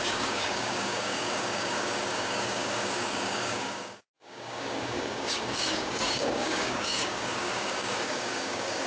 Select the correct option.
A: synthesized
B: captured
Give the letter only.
A